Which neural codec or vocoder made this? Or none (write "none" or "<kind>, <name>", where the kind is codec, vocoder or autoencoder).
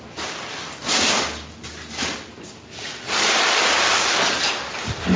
none